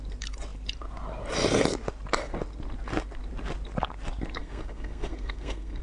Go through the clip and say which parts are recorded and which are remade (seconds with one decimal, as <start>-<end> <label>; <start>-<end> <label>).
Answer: 0.0-4.4 recorded; 4.4-5.8 remade